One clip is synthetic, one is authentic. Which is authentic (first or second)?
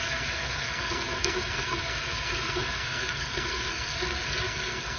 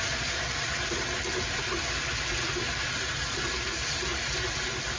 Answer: second